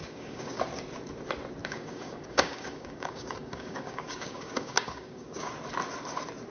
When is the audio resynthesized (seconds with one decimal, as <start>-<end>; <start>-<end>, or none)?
0.0-0.6; 1.6-5.5